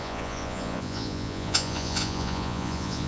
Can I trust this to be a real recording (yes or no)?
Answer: no